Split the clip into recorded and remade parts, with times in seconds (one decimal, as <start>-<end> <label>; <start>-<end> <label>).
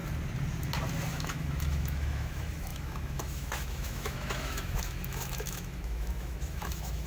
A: 0.0-1.1 recorded; 1.1-7.1 remade